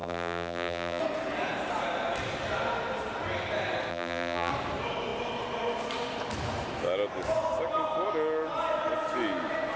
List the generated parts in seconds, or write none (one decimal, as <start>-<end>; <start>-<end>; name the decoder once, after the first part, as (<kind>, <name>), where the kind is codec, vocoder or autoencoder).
0.0-1.0 (vocoder, BigVGAN v2); 3.9-4.5